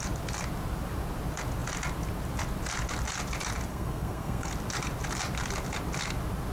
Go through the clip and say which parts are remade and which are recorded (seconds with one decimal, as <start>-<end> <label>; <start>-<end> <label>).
0.0-3.7 recorded; 3.7-4.5 remade; 4.5-6.5 recorded